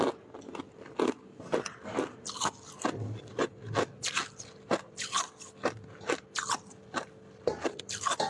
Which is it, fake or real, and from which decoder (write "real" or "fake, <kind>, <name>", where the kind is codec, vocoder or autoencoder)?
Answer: real